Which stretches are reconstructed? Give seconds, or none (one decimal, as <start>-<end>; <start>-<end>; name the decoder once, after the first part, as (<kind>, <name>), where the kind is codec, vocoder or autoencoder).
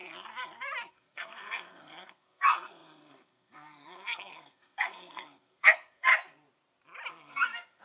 0.9-6.1 (codec, SNAC); 7.1-7.8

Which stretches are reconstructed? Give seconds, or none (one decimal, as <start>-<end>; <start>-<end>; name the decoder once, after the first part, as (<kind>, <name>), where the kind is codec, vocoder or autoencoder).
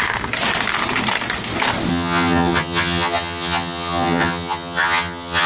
1.9-5.5 (vocoder, HiFi-GAN)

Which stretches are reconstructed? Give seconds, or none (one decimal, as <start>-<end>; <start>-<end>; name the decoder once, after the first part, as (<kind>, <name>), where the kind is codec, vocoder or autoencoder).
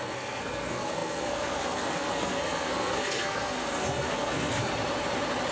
0.0-4.7 (codec, SNAC)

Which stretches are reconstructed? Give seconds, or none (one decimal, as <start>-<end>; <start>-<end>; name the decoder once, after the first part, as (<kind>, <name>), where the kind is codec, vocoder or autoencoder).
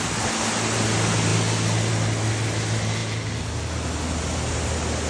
none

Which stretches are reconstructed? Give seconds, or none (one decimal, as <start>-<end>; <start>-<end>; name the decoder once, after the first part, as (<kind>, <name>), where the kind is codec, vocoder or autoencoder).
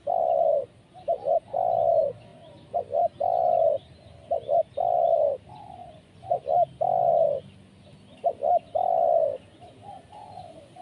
5.8-6.4 (vocoder, Vocos)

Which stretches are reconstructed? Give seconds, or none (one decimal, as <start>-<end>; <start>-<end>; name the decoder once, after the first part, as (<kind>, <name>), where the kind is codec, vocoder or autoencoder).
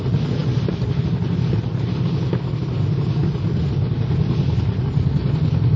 none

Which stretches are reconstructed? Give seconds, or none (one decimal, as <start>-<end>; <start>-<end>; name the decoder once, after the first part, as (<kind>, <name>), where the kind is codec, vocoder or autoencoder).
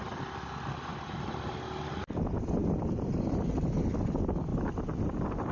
0.9-1.4 (vocoder, BigVGAN v2); 2.6-3.4; 4.5-5.0